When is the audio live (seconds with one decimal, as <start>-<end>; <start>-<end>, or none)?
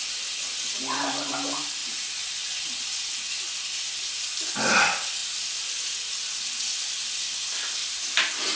0.0-1.8; 2.4-7.8